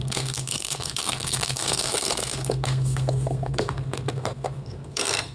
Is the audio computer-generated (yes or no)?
yes